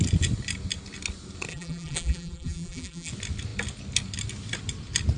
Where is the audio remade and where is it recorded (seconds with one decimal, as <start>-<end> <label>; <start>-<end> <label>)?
0.0-1.5 recorded; 1.5-3.1 remade; 3.1-5.2 recorded